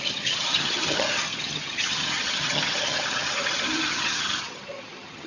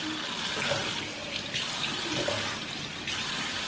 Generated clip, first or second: first